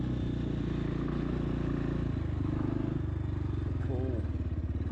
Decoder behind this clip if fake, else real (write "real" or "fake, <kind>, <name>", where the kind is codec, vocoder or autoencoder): real